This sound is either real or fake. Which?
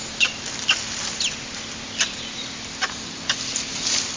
real